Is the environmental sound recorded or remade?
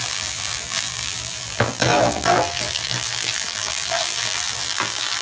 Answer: remade